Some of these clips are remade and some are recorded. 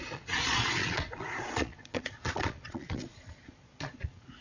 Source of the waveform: remade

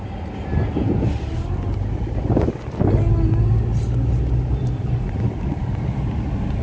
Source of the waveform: recorded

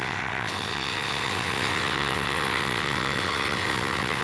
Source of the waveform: remade